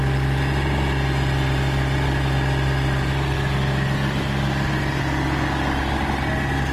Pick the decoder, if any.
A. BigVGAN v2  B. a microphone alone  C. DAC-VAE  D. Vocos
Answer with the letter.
B